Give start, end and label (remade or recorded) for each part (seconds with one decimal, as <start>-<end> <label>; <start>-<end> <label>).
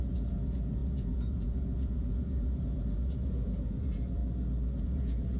0.0-4.2 remade; 4.2-4.8 recorded; 4.8-5.4 remade